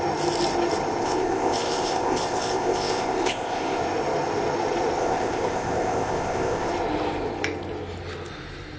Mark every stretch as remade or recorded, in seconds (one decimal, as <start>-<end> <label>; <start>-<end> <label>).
0.0-1.0 recorded; 1.0-3.8 remade; 3.8-5.0 recorded; 5.0-6.7 remade; 6.7-8.8 recorded

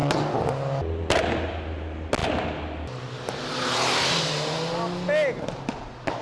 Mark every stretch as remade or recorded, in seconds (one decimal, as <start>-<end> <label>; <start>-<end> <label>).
0.0-6.2 recorded

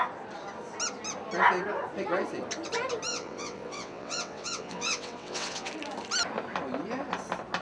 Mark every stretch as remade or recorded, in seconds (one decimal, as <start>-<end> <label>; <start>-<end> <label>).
0.0-3.1 recorded; 3.1-5.7 remade; 5.7-7.6 recorded

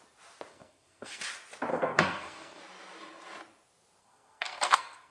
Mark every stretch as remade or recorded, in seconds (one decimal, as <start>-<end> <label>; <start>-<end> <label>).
0.0-0.5 recorded; 0.5-1.2 remade; 1.2-1.7 recorded; 1.7-2.6 remade; 2.6-4.0 recorded; 4.0-5.1 remade

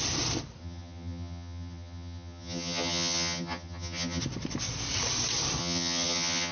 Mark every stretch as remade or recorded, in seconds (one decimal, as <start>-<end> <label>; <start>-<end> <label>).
0.0-0.6 recorded; 0.6-4.2 remade; 4.2-5.6 recorded; 5.6-6.5 remade